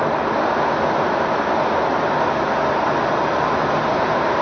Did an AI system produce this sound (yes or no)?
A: no